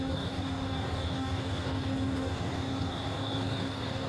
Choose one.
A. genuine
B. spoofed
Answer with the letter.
B